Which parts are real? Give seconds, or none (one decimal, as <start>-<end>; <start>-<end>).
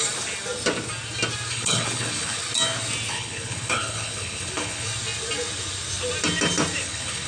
0.0-1.5; 2.4-3.1; 4.9-6.8